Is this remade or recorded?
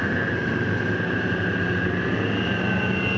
recorded